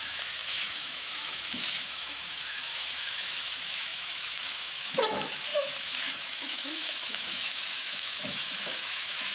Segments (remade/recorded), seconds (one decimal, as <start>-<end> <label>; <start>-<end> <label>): 0.0-9.3 remade